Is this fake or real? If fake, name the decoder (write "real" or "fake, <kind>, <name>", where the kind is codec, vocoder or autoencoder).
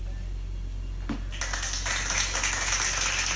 real